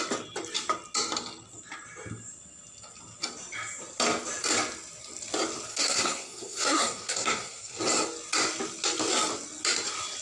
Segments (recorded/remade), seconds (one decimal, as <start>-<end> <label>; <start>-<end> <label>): 0.0-5.7 recorded; 5.7-7.8 remade; 7.8-10.2 recorded